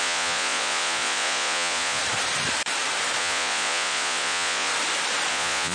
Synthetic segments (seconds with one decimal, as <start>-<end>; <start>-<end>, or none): 0.0-2.0; 3.2-4.7; 5.3-5.7